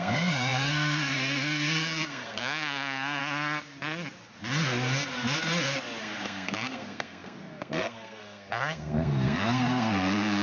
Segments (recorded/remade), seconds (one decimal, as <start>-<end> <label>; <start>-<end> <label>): 0.0-3.2 remade; 3.2-6.0 recorded; 6.0-10.4 remade